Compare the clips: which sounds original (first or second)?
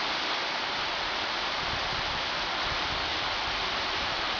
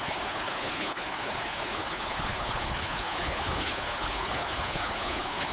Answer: first